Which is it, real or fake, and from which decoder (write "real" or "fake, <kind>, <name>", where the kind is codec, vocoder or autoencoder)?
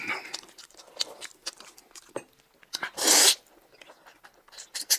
real